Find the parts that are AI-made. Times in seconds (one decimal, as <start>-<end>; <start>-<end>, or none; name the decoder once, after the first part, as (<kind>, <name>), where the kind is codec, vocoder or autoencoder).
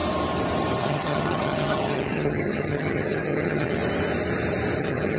0.8-3.8 (vocoder, HiFi-GAN); 4.8-5.2